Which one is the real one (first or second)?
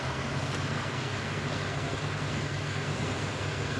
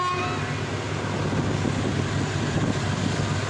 second